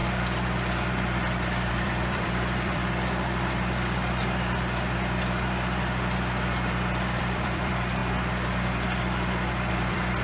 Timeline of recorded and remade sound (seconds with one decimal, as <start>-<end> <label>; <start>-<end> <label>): 0.0-1.7 recorded; 1.7-2.8 remade; 2.8-7.2 recorded; 7.2-8.0 remade; 8.0-9.7 recorded; 9.7-10.2 remade